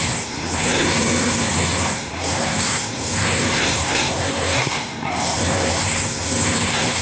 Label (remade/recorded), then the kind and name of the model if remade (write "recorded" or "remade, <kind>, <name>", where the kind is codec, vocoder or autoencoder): remade, codec, SNAC